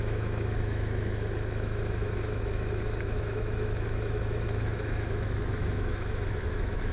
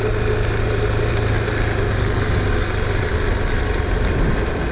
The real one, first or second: second